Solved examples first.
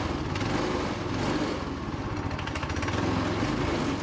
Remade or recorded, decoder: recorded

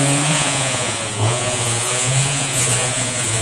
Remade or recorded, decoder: remade, vocoder, Vocos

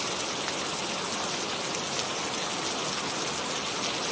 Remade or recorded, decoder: recorded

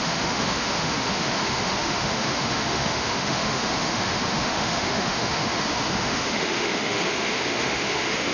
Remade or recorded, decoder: remade, autoencoder, DAC-VAE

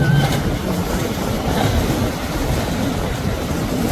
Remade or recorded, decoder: recorded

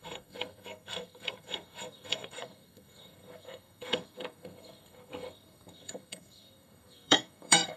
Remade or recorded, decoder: remade, codec, SNAC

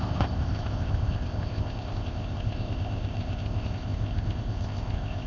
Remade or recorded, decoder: remade, codec, ZipCodec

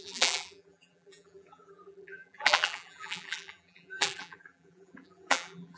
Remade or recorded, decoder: remade, vocoder, BigVGAN v2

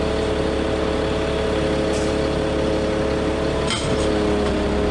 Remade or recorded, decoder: recorded